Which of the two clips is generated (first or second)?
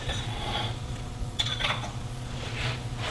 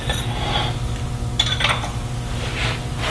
first